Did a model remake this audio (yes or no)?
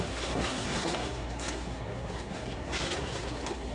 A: yes